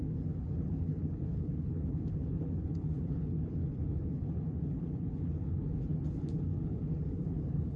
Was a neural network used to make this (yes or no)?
yes